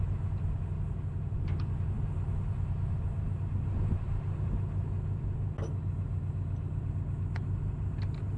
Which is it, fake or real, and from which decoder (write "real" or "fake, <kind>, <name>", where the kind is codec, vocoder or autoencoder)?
real